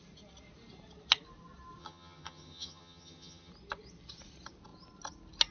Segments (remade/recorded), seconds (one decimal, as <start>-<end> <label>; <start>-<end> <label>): 0.0-1.8 recorded; 1.8-3.5 remade; 3.5-5.5 recorded